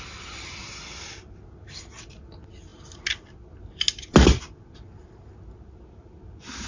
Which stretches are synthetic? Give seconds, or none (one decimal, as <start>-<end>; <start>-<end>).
none